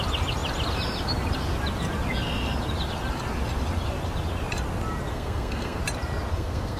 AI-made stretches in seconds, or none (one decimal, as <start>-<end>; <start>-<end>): 5.1-5.8; 6.3-6.8